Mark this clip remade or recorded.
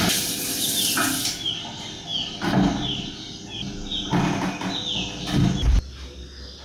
recorded